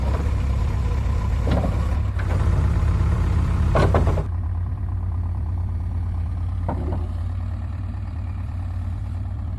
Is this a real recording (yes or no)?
no